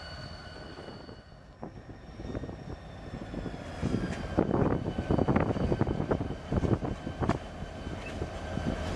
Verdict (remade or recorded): recorded